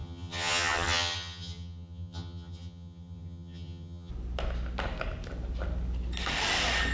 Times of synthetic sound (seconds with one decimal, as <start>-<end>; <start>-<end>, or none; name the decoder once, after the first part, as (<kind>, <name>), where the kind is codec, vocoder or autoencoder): 0.0-4.1 (vocoder, HiFi-GAN)